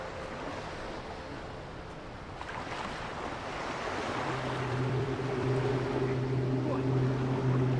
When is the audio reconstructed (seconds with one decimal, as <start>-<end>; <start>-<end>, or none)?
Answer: 1.7-5.7